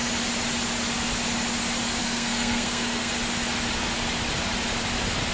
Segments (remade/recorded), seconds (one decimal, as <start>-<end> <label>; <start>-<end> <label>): 0.0-2.0 recorded; 2.0-3.1 remade; 3.1-5.3 recorded